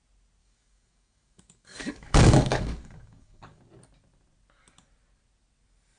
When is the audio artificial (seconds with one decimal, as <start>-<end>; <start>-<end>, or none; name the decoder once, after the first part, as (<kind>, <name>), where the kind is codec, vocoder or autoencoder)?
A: 0.4-3.6 (codec, DAC)